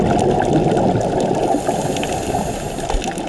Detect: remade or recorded recorded